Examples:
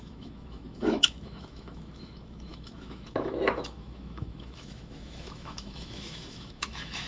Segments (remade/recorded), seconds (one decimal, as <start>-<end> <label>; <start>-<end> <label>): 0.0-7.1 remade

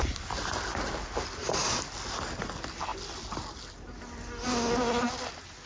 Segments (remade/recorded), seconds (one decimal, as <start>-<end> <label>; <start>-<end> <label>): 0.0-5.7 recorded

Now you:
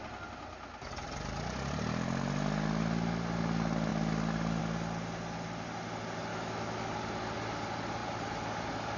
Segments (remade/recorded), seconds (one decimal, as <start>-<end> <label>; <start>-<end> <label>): 0.0-6.3 recorded; 6.3-6.9 remade; 6.9-9.0 recorded